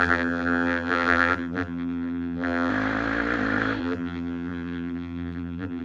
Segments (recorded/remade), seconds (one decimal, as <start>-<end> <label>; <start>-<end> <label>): 0.0-2.7 remade; 2.7-3.8 recorded; 3.8-5.8 remade